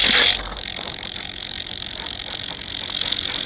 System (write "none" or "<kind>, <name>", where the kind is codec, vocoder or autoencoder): none